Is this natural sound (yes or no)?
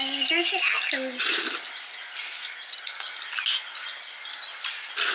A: yes